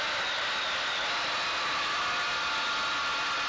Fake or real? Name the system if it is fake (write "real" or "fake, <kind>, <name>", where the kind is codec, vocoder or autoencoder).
real